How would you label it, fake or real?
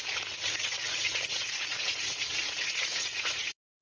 fake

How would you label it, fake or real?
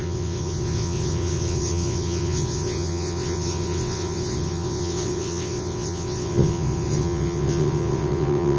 fake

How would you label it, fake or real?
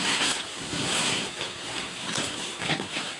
fake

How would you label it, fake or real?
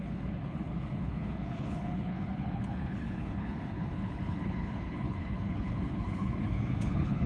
fake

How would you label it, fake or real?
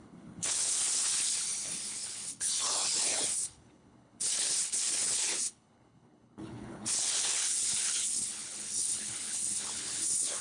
fake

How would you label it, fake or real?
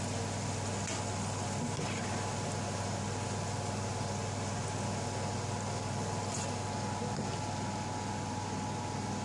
fake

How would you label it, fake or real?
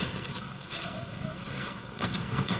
fake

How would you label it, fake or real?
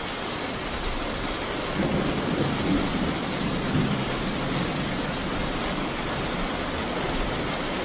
real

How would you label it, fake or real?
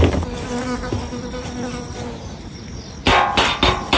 real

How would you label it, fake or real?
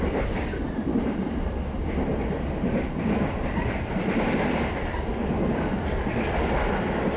fake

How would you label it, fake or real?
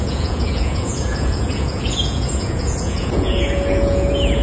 fake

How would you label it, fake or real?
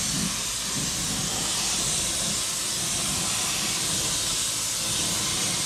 real